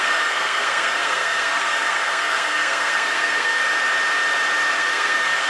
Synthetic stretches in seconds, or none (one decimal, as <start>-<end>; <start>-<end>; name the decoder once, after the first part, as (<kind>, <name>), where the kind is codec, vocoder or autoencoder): 0.0-3.6 (codec, SNAC); 4.7-5.5